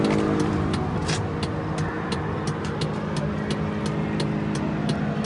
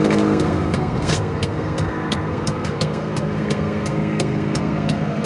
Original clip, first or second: first